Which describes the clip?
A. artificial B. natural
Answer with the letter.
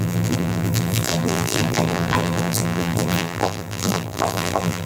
A